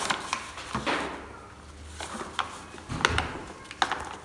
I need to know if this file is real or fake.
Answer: real